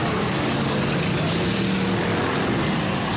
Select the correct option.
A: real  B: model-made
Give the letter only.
A